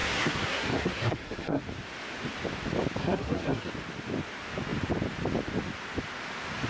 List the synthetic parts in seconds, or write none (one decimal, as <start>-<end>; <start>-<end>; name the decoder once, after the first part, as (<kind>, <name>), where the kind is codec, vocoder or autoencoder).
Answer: 0.0-1.6 (codec, SNAC); 3.0-3.7